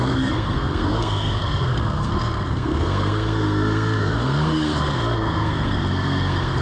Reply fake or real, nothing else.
fake